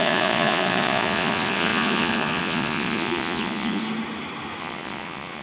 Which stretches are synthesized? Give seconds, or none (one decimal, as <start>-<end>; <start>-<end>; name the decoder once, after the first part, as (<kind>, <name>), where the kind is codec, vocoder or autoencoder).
0.0-3.8 (vocoder, Vocos); 4.6-5.4